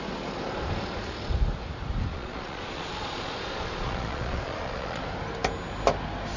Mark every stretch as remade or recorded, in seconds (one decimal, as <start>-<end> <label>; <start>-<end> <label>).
0.0-2.1 recorded; 2.1-5.0 remade; 5.0-6.4 recorded